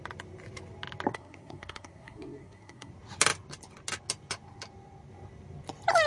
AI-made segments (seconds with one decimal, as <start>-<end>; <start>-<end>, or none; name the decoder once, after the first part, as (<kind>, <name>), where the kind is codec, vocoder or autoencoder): 1.1-2.9 (codec, SNAC)